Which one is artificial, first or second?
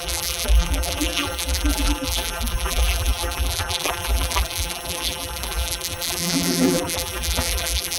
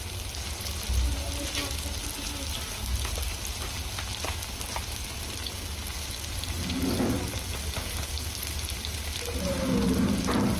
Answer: first